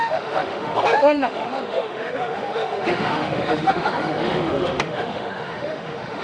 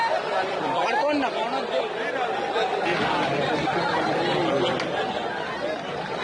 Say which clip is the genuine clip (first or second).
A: second